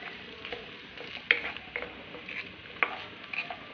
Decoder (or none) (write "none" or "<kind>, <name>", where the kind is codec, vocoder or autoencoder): none